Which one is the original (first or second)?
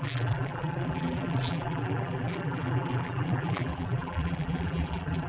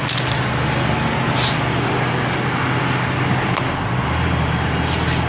second